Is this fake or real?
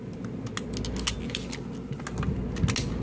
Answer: real